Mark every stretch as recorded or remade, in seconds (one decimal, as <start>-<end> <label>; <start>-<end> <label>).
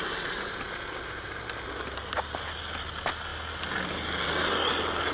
0.0-5.1 recorded